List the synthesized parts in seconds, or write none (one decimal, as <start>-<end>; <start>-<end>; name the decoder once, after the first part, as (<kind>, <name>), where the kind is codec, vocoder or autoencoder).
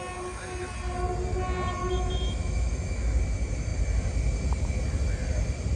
1.8-3.2 (autoencoder, DAC-VAE)